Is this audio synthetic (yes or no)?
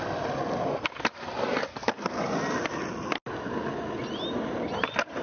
no